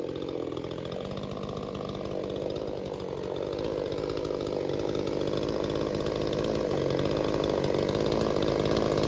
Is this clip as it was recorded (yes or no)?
yes